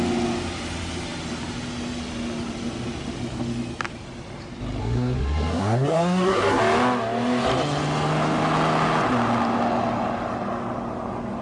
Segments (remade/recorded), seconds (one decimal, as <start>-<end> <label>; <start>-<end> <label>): 0.0-4.8 recorded; 4.8-6.6 remade; 6.6-11.4 recorded